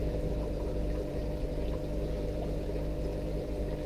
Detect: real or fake fake